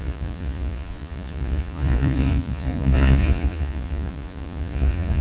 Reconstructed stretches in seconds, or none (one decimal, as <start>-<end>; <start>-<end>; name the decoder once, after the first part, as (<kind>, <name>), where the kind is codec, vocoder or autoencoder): 0.0-5.2 (vocoder, Vocos)